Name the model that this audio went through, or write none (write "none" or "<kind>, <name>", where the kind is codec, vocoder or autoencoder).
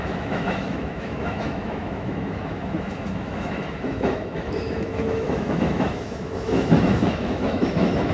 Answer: autoencoder, DAC-VAE